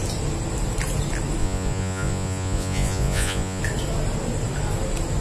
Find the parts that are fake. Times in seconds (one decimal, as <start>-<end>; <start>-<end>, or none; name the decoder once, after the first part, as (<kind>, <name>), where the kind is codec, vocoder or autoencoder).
1.4-3.6 (vocoder, Vocos)